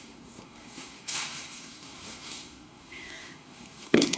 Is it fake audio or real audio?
fake